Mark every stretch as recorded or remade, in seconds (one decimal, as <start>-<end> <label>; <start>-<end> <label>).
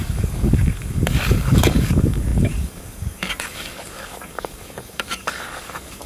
0.0-6.1 remade